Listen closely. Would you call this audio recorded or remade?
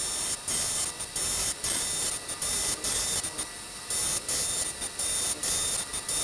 recorded